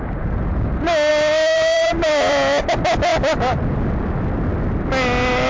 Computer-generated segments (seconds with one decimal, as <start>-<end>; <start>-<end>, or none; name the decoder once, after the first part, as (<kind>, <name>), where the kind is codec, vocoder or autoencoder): 1.1-2.6 (vocoder, BigVGAN v2)